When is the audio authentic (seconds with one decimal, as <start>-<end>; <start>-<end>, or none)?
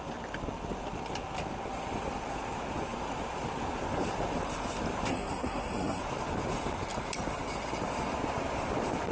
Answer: 0.0-5.1; 6.0-9.1